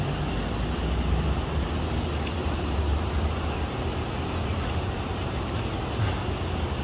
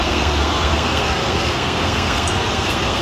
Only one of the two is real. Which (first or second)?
first